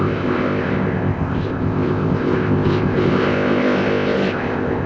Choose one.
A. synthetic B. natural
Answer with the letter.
A